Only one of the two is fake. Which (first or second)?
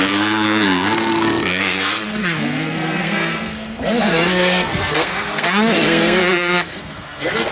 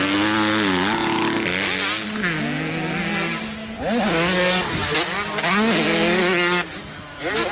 first